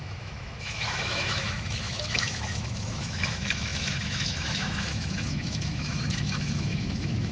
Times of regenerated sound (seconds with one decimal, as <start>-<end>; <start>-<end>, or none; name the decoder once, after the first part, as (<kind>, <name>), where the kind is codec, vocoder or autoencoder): 0.0-7.3 (autoencoder, DAC-VAE)